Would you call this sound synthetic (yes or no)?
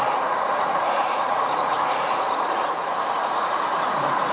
yes